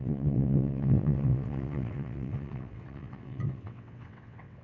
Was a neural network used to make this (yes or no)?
yes